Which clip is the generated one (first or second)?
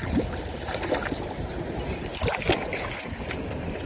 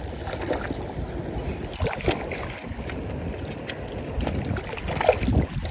first